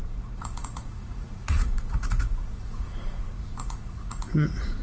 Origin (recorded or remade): remade